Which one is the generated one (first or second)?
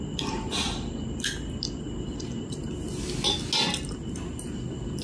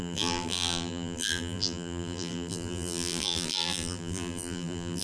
second